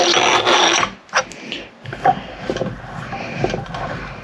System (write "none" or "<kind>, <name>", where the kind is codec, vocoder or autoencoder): none